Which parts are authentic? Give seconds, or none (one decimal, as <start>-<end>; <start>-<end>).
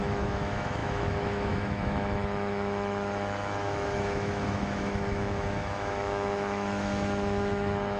none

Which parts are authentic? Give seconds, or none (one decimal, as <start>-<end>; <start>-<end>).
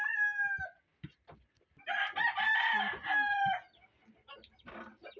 0.0-5.2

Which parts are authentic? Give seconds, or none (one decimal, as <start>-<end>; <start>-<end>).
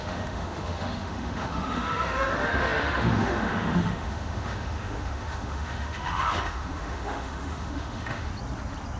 8.3-9.0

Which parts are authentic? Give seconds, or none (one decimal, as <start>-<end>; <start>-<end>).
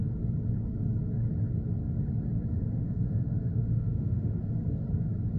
0.0-2.5; 4.4-5.4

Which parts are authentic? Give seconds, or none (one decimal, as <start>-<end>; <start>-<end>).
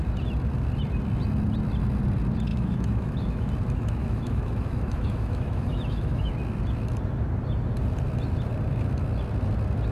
0.0-2.5; 3.5-4.0; 6.3-9.9